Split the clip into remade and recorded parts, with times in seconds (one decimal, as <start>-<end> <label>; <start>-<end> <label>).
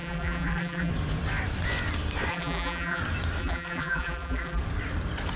0.0-0.9 remade; 0.9-2.3 recorded; 2.3-3.0 remade; 3.0-3.4 recorded; 3.4-4.6 remade; 4.6-5.4 recorded